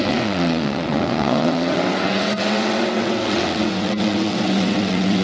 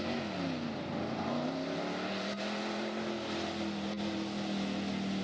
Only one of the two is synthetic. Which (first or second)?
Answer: first